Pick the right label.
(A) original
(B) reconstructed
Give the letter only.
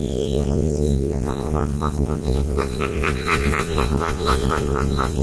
B